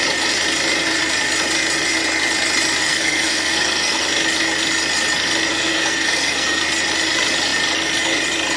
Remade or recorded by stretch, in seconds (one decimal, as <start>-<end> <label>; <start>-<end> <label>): 0.0-2.8 recorded; 2.8-4.0 remade; 4.0-5.5 recorded; 5.5-6.6 remade; 6.6-8.6 recorded